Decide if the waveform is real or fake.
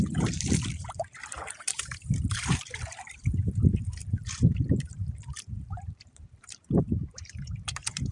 fake